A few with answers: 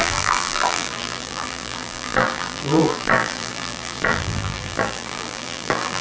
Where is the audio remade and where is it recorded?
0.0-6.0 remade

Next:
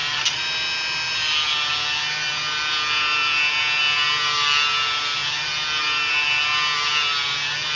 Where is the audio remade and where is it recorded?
0.0-7.8 recorded

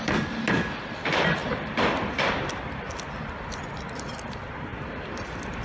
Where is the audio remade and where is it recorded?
0.0-5.6 remade

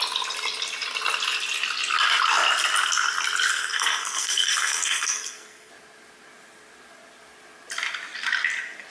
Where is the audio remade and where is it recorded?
0.0-3.5 recorded; 3.5-5.7 remade; 5.7-8.9 recorded

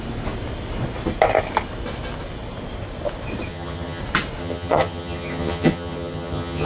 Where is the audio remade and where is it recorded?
0.0-3.5 recorded; 3.5-4.0 remade; 4.0-4.4 recorded; 4.4-6.7 remade